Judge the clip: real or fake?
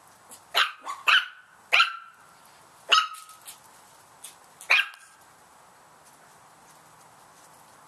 real